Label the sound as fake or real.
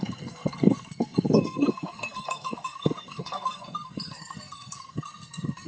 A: fake